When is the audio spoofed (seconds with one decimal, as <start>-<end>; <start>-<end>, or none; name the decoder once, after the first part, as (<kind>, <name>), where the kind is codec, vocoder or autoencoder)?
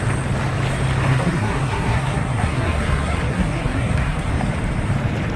1.1-4.3 (codec, SNAC)